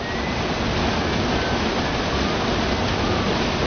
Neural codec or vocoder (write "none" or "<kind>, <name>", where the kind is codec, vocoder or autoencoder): none